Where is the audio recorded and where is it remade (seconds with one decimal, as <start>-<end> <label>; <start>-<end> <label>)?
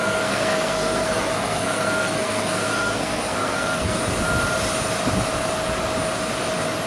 0.0-4.0 remade; 4.0-6.9 recorded